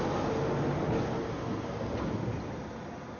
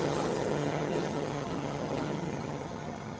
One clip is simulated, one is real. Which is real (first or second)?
first